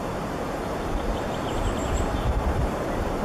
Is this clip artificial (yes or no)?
yes